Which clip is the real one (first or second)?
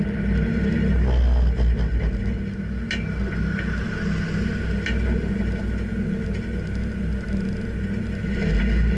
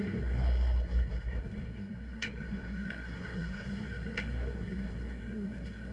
first